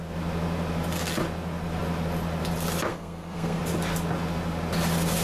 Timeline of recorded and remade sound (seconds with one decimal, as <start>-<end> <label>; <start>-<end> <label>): 0.0-2.9 recorded; 2.9-3.6 remade; 3.6-5.2 recorded